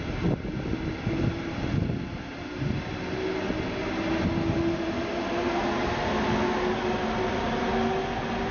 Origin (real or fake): real